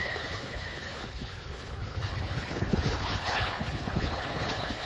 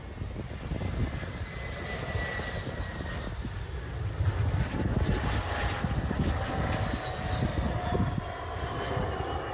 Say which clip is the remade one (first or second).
first